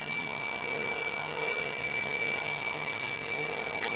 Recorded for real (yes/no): no